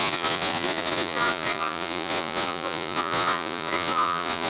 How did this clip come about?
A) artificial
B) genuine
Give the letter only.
A